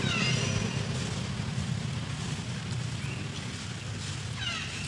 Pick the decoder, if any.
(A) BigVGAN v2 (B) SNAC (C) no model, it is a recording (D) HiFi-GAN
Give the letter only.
C